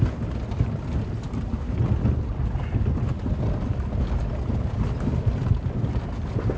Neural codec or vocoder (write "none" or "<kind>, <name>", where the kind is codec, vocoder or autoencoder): none